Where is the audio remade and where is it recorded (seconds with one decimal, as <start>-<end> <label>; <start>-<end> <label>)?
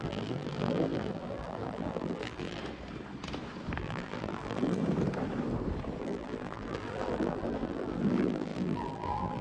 0.0-2.6 remade; 2.6-3.8 recorded; 3.8-4.8 remade; 4.8-6.0 recorded; 6.0-9.4 remade